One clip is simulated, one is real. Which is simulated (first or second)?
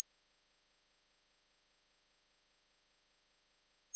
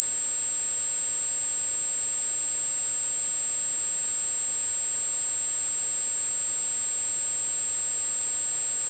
first